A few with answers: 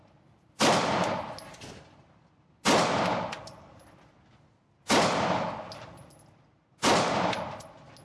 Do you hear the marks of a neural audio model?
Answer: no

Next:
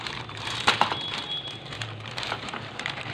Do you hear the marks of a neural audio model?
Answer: yes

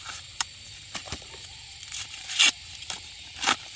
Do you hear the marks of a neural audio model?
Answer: yes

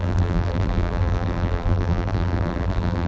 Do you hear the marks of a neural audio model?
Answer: yes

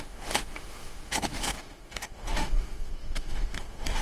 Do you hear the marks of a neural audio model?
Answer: yes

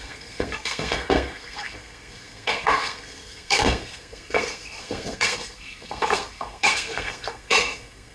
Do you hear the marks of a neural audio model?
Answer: yes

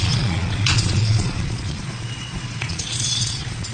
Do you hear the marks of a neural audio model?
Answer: yes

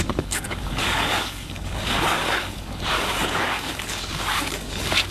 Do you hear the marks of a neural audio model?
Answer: yes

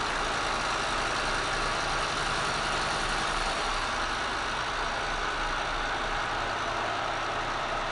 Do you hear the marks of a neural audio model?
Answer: no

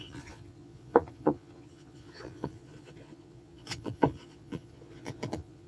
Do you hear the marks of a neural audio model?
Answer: yes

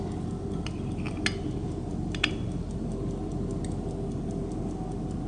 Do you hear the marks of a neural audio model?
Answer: no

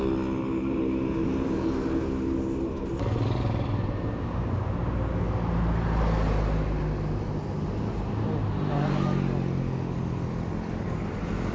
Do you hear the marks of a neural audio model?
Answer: no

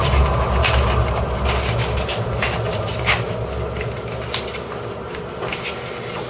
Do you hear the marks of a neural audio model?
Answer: no